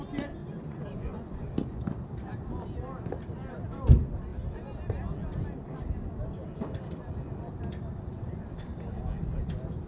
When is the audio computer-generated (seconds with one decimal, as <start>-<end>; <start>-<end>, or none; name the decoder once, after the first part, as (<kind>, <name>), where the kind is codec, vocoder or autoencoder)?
0.4-1.5 (vocoder, Vocos)